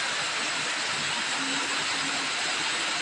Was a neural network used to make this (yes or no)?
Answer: no